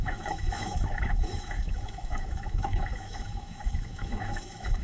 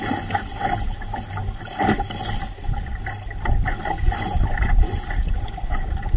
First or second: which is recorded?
second